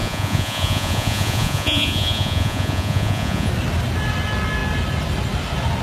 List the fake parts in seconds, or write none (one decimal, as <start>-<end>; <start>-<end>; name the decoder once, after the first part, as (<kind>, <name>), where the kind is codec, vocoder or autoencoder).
0.0-3.5 (vocoder, Vocos)